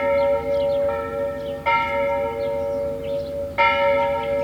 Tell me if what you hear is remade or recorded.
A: recorded